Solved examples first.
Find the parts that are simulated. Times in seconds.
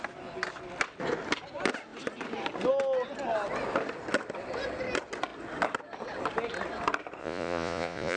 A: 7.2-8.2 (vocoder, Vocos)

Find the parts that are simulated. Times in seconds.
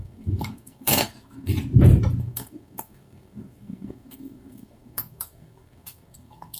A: 0.0-1.5 (codec, SNAC); 2.2-6.6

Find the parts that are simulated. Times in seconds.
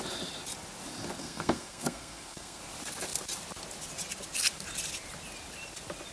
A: 1.2-2.6 (codec, SNAC)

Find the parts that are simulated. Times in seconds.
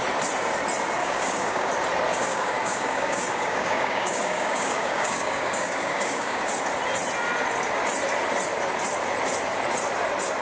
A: 1.0-1.7 (codec, DAC); 2.1-6.5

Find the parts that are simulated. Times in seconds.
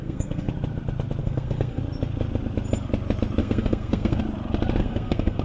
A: 0.0-0.5 (codec, SNAC); 1.2-1.8; 3.4-4.2; 4.8-5.4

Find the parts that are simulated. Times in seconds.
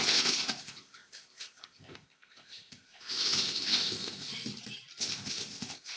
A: 0.0-4.3 (codec, ZipCodec); 5.0-6.0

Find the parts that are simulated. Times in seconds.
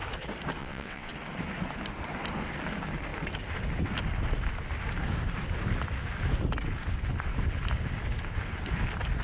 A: 0.6-1.1 (vocoder, WaveNeXt)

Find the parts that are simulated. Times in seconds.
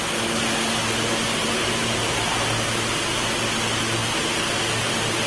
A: 1.4-2.4 (vocoder, BigVGAN v2)